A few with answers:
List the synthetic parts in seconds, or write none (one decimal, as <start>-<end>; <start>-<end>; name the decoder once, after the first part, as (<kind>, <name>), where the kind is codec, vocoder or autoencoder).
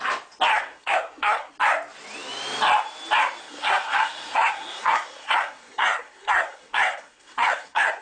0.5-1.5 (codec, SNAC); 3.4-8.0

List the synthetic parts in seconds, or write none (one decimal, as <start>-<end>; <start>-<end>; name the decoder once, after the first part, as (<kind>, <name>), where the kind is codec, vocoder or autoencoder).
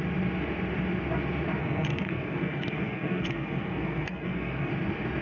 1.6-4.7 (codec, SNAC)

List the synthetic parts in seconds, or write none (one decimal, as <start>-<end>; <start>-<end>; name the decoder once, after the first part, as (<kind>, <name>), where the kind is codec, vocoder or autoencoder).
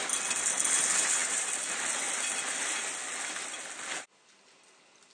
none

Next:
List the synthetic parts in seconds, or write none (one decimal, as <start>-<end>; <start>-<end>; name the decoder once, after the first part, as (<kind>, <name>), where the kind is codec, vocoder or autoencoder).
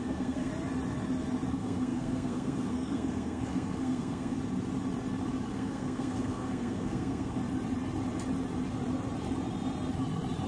0.0-0.5 (codec, SNAC); 1.5-4.4; 5.5-7.4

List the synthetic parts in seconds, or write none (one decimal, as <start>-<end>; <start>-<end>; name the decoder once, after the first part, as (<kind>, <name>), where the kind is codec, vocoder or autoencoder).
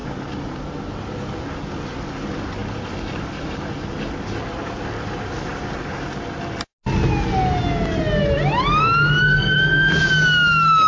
9.2-9.9 (codec, SNAC)